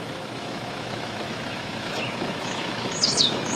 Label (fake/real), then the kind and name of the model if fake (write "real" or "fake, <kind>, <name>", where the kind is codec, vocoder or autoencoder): fake, autoencoder, DAC-VAE